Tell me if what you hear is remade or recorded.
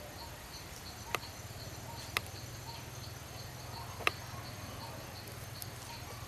recorded